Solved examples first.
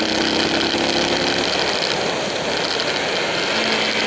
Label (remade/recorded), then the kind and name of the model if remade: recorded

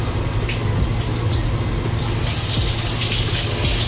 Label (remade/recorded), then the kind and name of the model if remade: recorded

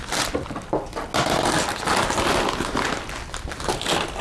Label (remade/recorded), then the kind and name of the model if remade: recorded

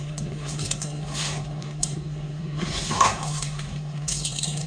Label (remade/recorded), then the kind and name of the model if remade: remade, codec, SNAC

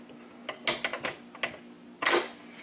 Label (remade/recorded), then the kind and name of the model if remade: recorded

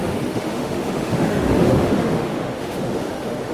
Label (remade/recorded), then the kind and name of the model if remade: remade, autoencoder, DAC-VAE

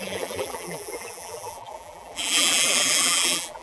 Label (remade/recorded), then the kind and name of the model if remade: remade, vocoder, BigVGAN v2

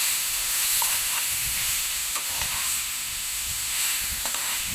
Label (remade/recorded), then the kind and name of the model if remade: remade, autoencoder, DAC-VAE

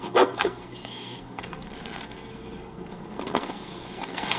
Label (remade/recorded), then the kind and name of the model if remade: remade, codec, SNAC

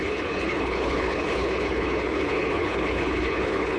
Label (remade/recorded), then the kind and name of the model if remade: remade, codec, HILCodec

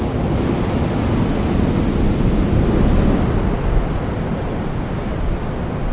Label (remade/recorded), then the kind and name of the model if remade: recorded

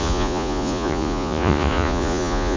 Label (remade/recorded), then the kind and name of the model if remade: remade, vocoder, Vocos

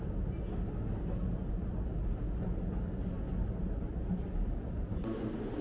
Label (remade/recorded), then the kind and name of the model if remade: recorded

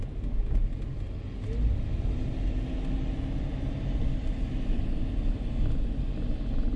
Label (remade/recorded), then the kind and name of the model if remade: recorded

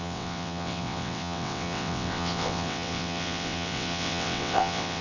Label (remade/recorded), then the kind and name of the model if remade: remade, vocoder, WaveNeXt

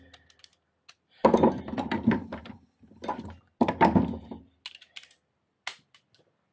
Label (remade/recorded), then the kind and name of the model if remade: recorded